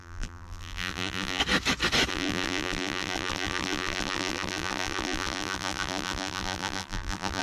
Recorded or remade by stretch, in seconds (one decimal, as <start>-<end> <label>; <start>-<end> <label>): 0.0-1.4 remade; 1.4-2.1 recorded; 2.1-7.4 remade